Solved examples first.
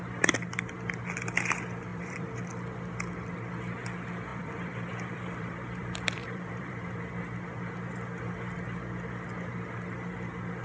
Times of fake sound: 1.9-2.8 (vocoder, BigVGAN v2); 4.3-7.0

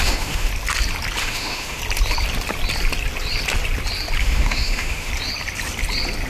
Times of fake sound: 0.0-0.5 (autoencoder, DAC-VAE); 1.2-1.8; 4.2-5.1

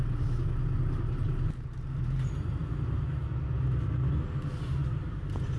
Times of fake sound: none

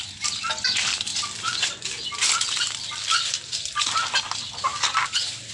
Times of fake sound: none

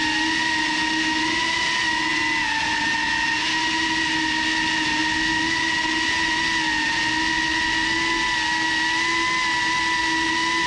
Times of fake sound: none

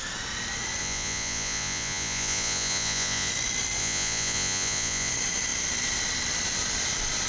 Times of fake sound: 0.8-3.3 (vocoder, Vocos); 3.8-5.1

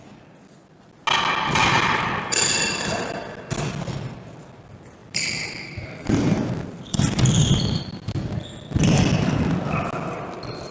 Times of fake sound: 1.6-3.1 (vocoder, BigVGAN v2); 5.0-7.8

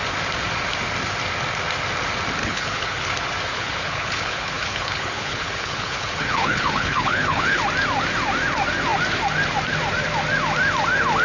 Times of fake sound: 2.4-3.1 (codec, HILCodec); 3.5-7.6